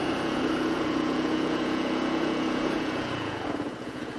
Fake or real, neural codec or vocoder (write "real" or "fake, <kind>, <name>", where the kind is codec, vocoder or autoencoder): fake, vocoder, Vocos